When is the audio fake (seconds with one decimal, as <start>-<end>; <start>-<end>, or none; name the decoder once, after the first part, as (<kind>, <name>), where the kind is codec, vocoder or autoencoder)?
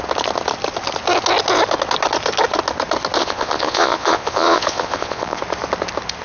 3.2-5.4 (vocoder, Vocos)